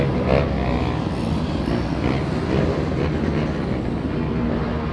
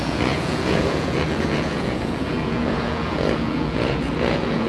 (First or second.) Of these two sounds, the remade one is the second